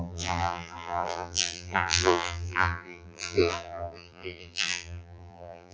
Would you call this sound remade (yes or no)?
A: yes